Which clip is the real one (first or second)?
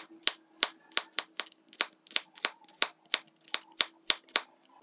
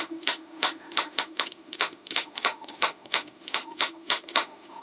first